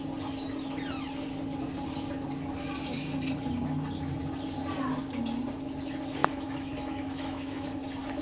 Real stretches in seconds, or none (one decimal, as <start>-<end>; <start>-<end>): 0.0-6.2; 7.7-8.2